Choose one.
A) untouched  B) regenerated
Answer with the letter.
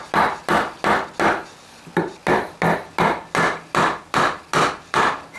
A